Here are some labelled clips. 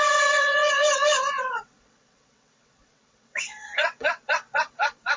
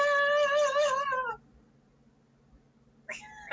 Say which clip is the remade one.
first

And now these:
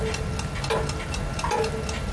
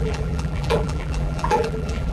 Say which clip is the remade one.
second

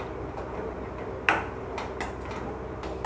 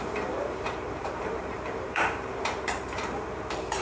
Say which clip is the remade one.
second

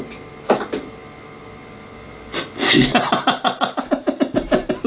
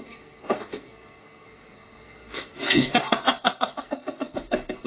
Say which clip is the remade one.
second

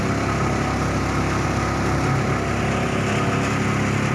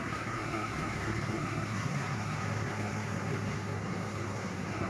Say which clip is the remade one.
second